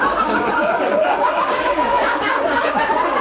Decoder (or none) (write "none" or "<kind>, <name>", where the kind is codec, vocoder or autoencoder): codec, DAC